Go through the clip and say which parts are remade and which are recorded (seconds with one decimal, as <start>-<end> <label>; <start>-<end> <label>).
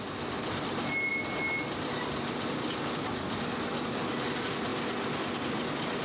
0.0-6.0 recorded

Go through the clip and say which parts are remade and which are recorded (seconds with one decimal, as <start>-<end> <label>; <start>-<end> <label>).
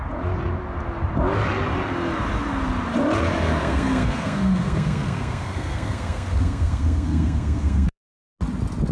0.0-3.6 recorded; 3.6-8.3 remade; 8.3-8.9 recorded